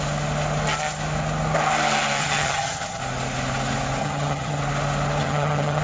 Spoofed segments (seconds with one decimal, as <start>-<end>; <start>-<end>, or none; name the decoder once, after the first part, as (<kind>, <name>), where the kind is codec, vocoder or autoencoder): 2.2-3.0 (vocoder, HiFi-GAN); 4.0-4.6; 5.2-5.8